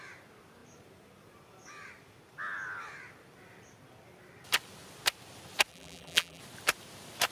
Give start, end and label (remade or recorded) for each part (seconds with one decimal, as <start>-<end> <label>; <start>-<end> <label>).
0.0-5.7 recorded; 5.7-6.4 remade; 6.4-7.3 recorded